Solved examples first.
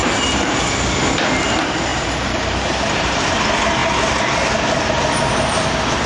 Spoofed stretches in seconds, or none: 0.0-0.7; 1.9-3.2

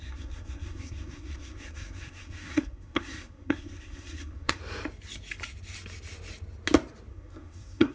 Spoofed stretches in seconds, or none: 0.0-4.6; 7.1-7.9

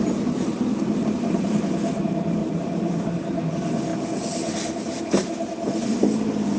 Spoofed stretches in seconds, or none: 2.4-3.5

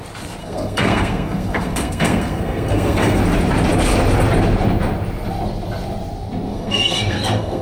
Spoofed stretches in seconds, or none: 0.4-3.2; 6.5-7.6

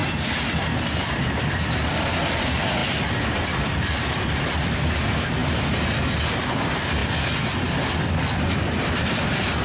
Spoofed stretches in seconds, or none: 1.9-2.8; 3.9-5.4; 6.0-7.0; 8.7-9.6

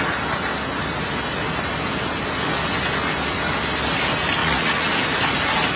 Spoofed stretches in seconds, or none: 4.4-4.9

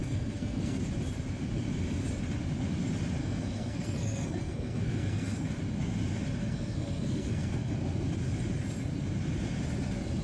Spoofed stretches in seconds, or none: 0.0-0.8; 3.2-5.5; 6.4-7.7

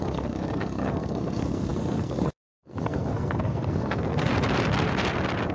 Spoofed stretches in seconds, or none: 0.0-4.3